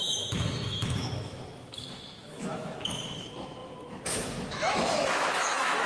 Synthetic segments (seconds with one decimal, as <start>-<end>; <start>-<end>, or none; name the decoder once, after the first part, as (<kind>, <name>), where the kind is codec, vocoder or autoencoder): 0.0-5.9 (autoencoder, DAC-VAE)

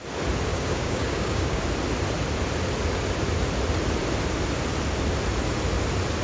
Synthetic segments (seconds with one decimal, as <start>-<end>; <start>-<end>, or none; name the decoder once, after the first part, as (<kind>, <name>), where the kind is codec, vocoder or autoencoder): 0.5-1.6 (codec, DAC)